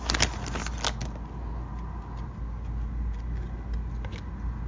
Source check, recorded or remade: recorded